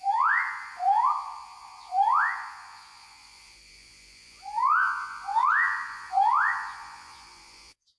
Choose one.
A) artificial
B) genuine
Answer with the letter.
A